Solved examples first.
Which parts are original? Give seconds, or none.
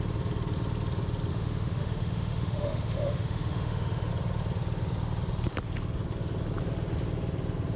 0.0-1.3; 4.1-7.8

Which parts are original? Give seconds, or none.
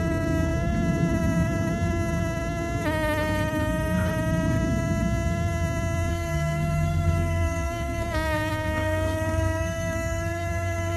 0.0-6.1